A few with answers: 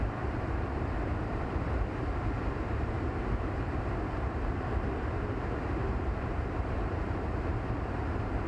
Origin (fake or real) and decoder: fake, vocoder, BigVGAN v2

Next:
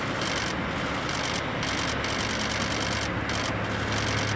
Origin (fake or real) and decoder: real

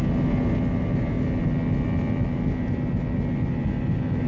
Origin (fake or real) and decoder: real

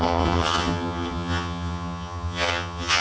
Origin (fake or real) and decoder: fake, vocoder, HiFi-GAN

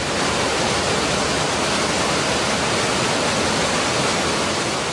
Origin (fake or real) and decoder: real